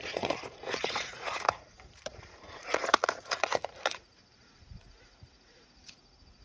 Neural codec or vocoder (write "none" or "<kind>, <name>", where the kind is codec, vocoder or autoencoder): vocoder, Vocos